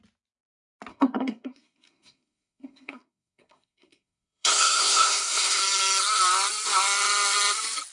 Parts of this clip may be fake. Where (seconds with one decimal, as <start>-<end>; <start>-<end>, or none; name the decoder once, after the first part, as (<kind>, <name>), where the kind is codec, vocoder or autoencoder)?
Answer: 0.9-5.6 (codec, SNAC)